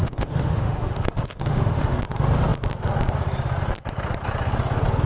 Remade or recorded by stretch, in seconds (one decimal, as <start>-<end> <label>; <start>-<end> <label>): 0.0-2.0 remade; 2.0-5.1 recorded